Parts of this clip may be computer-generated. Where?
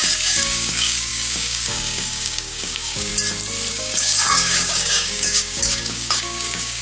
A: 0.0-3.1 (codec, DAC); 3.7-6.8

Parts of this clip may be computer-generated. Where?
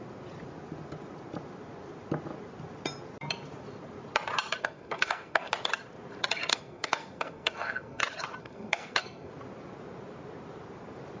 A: 4.6-5.5 (codec, SNAC); 6.5-8.0; 8.4-9.3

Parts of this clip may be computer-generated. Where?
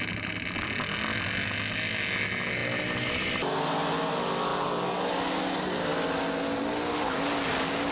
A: none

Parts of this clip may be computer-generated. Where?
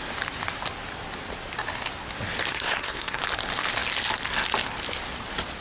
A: 2.5-3.2 (codec, SNAC)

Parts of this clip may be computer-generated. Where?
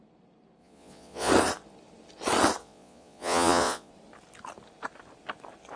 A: 0.6-1.3 (vocoder, Vocos); 2.6-3.9